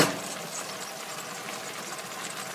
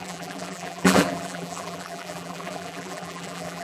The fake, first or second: second